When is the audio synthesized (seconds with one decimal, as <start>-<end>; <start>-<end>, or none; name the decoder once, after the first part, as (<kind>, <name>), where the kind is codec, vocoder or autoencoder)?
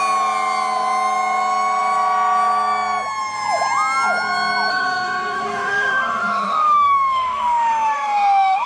4.7-8.7 (autoencoder, DAC-VAE)